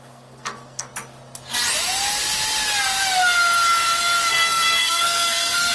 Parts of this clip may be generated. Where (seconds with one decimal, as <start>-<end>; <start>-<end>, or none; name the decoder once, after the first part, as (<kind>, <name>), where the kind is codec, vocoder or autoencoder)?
0.0-0.9 (codec, SNAC); 4.3-5.7